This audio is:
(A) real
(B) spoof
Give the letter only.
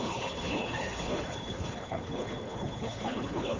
B